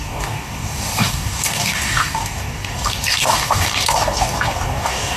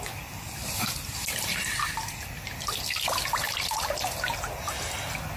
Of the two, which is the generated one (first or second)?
first